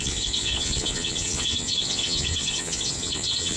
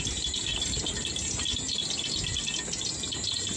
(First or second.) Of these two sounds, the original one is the second